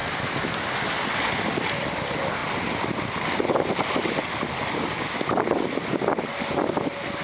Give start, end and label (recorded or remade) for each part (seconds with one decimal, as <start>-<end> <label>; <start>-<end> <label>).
0.0-7.2 recorded